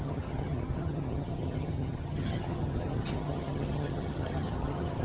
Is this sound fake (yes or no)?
yes